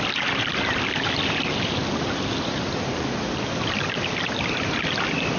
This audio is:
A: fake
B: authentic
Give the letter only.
B